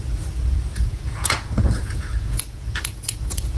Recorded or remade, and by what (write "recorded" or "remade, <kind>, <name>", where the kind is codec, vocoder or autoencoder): remade, vocoder, Vocos